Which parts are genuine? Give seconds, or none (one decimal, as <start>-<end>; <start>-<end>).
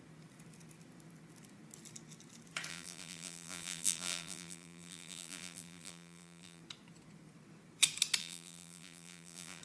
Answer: 0.0-2.7; 6.6-8.2